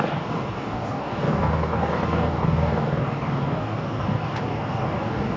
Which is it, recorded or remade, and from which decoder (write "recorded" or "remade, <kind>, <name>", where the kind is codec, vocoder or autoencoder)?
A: remade, codec, DAC